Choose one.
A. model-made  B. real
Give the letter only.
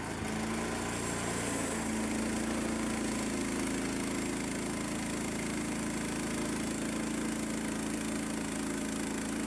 B